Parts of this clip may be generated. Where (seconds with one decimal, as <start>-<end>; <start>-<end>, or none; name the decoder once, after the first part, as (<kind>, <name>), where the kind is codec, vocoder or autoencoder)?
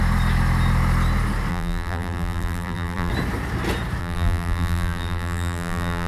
1.5-3.1 (vocoder, BigVGAN v2); 4.0-6.1